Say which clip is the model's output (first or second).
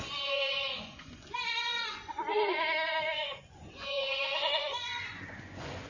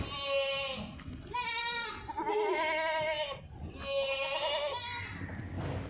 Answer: first